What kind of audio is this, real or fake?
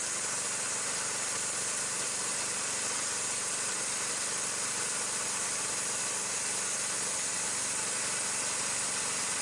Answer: real